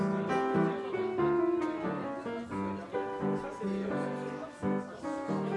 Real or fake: real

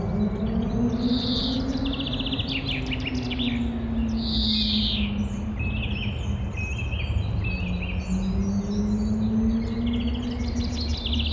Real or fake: real